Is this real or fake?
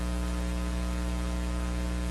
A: real